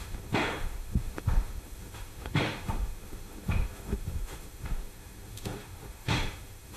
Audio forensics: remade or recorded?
remade